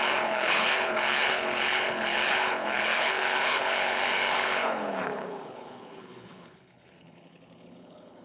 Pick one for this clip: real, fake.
fake